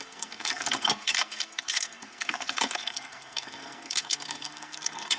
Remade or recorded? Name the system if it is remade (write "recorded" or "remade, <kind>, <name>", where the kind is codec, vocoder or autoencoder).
remade, codec, SNAC